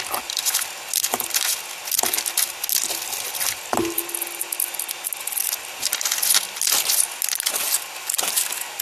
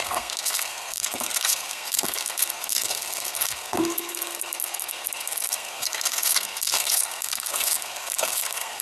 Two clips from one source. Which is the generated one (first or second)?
second